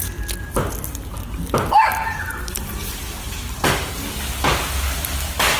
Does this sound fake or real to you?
real